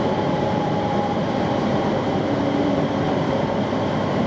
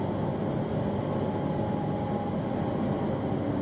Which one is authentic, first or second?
second